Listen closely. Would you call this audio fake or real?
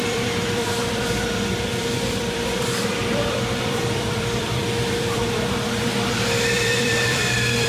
fake